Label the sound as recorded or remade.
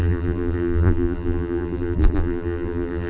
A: remade